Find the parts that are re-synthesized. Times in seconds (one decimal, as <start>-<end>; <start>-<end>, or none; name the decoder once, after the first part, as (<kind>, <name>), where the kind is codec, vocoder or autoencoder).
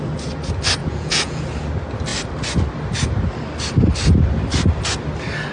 0.8-1.4 (vocoder, Vocos)